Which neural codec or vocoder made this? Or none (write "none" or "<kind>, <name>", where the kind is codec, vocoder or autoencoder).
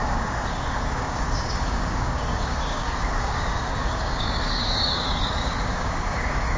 codec, DAC